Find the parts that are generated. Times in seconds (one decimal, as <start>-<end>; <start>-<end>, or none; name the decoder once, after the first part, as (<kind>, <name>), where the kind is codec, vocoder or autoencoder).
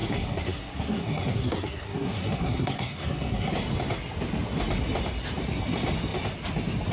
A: 0.0-3.5 (codec, SNAC)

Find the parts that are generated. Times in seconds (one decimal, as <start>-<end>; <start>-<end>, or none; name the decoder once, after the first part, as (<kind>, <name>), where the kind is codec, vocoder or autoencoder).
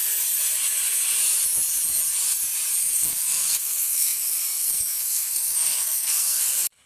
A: 2.8-6.9 (codec, SNAC)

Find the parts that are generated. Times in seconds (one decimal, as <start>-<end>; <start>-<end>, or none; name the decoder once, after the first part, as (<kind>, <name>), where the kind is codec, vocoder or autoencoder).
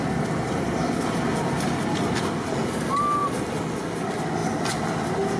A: none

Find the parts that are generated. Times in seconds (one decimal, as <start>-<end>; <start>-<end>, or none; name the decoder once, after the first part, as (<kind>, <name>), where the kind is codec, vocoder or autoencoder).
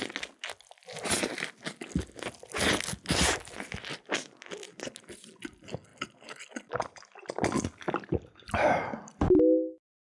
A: none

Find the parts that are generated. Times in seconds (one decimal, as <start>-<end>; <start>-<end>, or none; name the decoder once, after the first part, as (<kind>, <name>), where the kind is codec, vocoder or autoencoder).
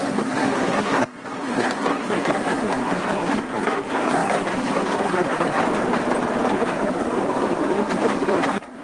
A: 0.0-5.6 (codec, SNAC); 6.5-8.8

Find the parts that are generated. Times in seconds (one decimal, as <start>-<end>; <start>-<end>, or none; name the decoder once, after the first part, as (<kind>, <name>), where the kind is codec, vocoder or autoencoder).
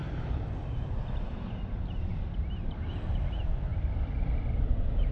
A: none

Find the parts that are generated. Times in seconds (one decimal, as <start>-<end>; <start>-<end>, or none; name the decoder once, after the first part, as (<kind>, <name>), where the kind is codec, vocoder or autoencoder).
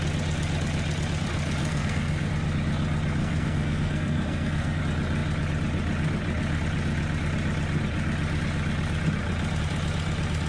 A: 1.6-2.3 (codec, SNAC); 3.2-4.8